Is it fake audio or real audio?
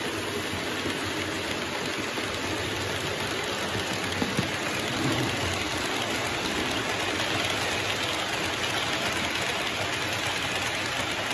real